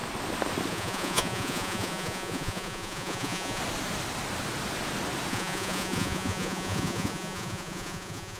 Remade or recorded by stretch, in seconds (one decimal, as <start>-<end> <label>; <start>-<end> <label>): 0.0-0.7 recorded; 0.7-3.6 remade; 3.6-5.3 recorded; 5.3-8.4 remade